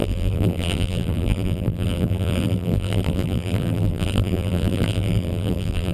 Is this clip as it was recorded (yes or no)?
no